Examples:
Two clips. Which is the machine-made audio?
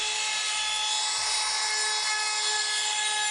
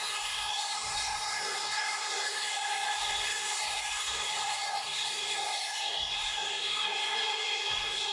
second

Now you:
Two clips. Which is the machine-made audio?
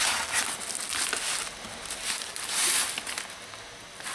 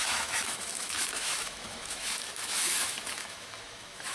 second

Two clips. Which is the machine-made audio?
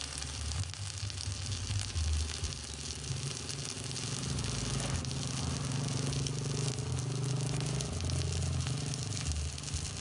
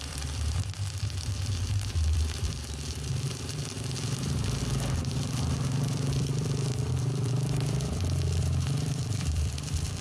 second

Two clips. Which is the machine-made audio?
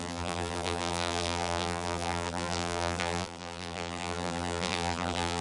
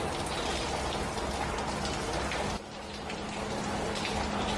first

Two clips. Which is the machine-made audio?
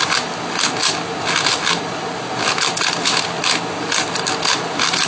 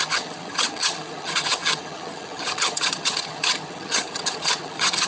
second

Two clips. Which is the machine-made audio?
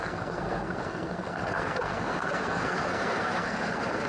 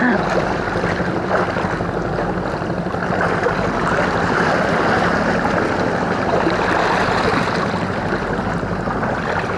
first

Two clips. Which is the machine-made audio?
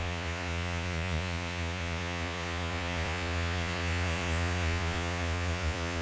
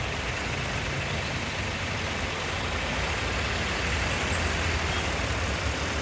first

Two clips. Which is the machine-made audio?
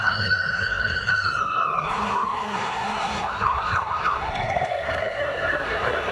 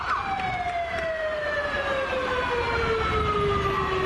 first